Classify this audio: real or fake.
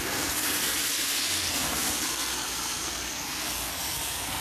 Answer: fake